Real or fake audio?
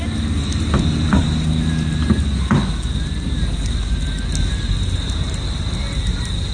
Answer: real